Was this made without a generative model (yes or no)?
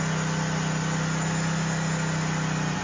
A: yes